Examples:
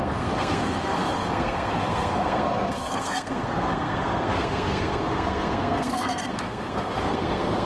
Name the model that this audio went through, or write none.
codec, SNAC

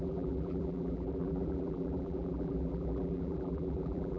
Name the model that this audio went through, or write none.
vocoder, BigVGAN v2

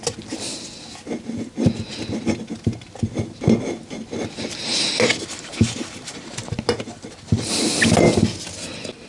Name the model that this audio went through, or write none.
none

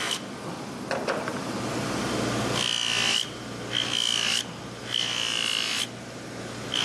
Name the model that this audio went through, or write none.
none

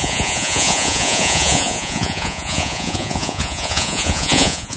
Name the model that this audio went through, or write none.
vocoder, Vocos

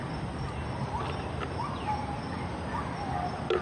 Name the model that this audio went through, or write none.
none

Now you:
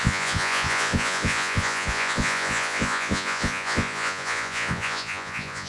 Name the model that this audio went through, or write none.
vocoder, Vocos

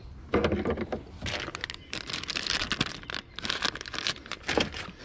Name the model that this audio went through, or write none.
none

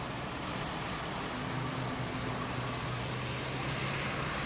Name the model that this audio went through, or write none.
none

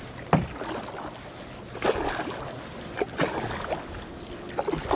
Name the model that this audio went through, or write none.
none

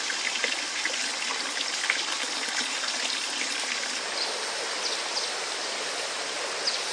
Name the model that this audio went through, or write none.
none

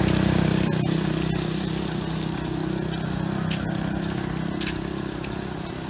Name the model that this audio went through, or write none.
none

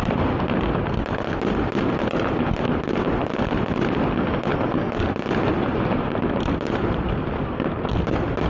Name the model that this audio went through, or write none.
none